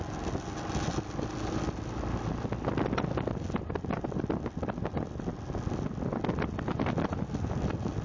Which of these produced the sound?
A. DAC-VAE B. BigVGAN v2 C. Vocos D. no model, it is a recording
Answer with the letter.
D